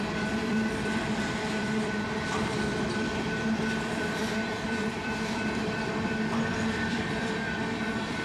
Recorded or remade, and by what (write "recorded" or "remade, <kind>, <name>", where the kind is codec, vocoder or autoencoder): remade, vocoder, BigVGAN v2